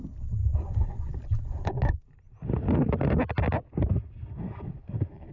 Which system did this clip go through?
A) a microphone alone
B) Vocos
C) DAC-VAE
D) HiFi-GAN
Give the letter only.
A